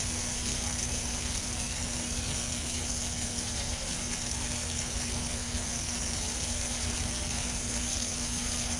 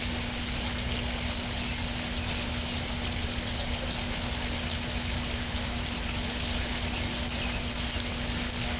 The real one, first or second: second